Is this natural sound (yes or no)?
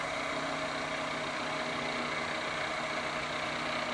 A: yes